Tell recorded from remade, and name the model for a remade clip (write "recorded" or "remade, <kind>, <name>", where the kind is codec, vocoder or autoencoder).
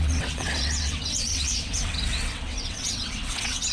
remade, vocoder, WaveNeXt